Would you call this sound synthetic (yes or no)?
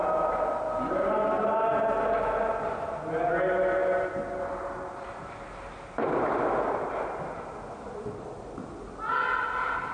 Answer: no